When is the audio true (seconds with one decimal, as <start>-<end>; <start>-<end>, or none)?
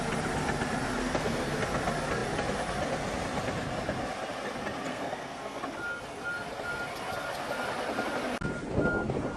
0.0-1.0; 1.6-4.9; 5.6-9.4